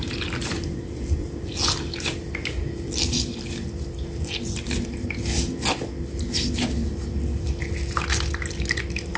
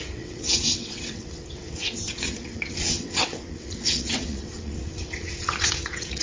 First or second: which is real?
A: first